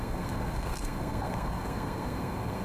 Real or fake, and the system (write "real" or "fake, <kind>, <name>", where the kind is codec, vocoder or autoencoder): fake, codec, SNAC